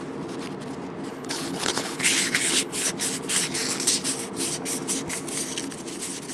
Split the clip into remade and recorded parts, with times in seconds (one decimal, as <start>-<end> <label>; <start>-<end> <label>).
0.0-1.1 recorded; 1.1-2.9 remade; 2.9-6.3 recorded

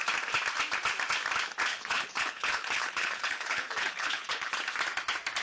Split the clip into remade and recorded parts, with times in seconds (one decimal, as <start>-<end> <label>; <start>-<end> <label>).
0.0-1.7 recorded; 1.7-4.5 remade; 4.5-5.4 recorded

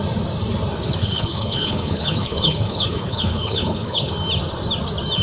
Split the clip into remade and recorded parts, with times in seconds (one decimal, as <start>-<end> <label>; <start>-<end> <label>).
0.0-1.0 recorded; 1.0-4.1 remade; 4.1-5.2 recorded

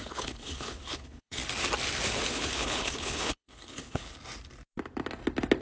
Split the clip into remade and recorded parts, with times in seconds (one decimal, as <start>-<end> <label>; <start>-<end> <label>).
0.0-1.4 remade; 1.4-2.3 recorded; 2.3-4.1 remade; 4.1-5.6 recorded

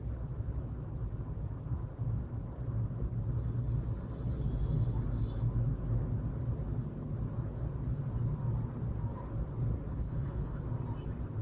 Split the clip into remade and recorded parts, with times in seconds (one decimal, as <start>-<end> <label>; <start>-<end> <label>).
0.0-9.9 recorded; 9.9-10.6 remade; 10.6-11.4 recorded

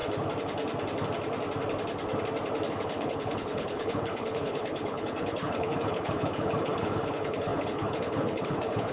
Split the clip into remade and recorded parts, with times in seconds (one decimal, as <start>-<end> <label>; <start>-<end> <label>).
0.0-2.7 recorded; 2.7-8.9 remade

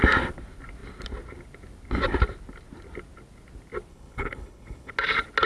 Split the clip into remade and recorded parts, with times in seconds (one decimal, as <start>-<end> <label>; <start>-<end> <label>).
0.0-3.9 recorded; 3.9-4.9 remade; 4.9-5.5 recorded